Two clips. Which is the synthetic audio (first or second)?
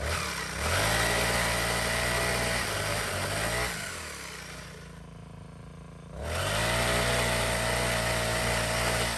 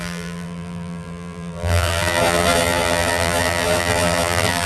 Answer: second